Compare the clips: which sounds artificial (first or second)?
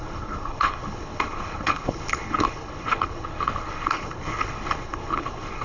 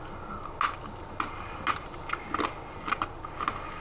first